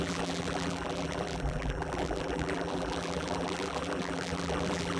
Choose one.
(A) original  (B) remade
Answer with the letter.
B